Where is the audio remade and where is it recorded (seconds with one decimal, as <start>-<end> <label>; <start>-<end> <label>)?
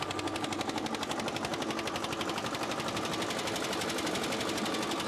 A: 0.0-5.1 recorded